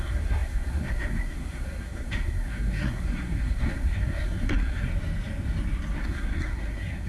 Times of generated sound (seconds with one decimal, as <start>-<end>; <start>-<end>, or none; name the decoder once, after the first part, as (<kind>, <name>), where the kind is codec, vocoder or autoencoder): 0.0-4.9 (codec, SNAC); 6.0-7.1